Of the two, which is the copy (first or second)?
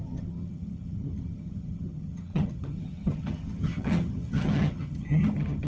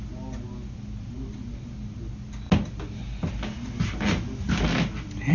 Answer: first